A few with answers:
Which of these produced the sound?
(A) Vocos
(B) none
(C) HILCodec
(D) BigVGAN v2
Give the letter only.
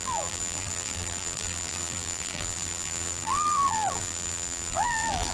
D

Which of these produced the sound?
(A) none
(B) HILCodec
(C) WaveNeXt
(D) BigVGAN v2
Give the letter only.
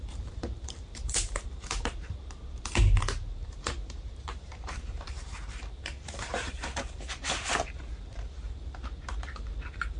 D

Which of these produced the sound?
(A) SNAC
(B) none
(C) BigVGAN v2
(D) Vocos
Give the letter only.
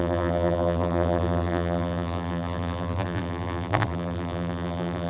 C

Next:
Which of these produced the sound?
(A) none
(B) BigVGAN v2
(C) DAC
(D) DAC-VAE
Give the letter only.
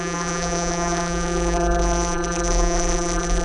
B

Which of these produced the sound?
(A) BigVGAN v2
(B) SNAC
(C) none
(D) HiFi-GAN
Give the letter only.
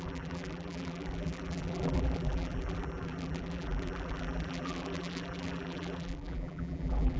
A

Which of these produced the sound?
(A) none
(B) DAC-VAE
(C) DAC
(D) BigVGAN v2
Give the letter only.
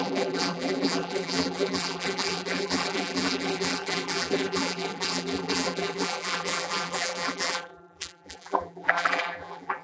D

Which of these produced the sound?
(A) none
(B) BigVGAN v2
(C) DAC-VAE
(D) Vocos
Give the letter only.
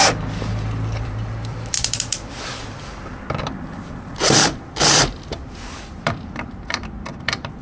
B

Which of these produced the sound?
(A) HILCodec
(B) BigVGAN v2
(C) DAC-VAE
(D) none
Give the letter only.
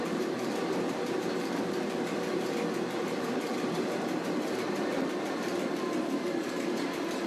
B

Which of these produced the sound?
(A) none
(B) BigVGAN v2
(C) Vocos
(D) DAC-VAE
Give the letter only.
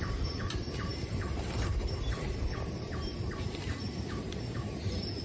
B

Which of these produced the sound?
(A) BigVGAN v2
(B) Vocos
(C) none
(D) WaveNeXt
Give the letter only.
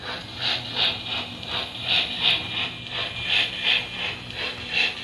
C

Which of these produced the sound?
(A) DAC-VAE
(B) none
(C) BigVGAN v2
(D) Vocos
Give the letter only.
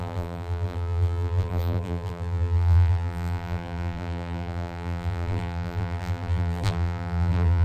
C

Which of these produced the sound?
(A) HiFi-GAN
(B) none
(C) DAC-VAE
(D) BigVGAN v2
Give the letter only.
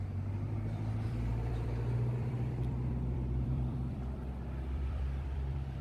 D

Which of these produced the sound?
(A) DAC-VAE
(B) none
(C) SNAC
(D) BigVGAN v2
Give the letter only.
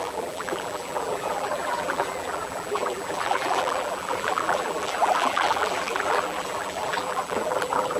D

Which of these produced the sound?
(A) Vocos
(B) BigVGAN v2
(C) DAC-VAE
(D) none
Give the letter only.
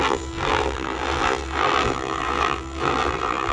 B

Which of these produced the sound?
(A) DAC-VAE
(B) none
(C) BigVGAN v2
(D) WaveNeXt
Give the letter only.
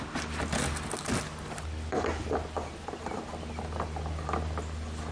C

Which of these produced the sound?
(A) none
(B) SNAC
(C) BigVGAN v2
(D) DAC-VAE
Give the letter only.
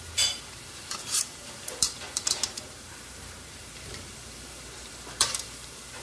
C